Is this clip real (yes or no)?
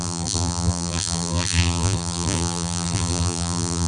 no